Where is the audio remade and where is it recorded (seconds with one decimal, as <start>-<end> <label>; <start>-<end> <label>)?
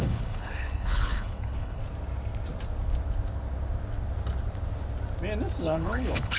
0.0-1.8 remade; 1.8-5.6 recorded; 5.6-6.4 remade